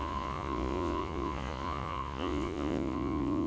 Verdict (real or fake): fake